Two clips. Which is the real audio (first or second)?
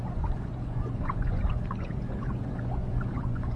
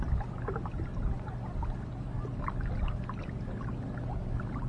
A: second